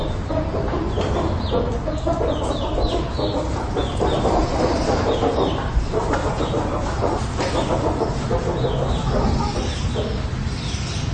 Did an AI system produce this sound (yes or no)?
no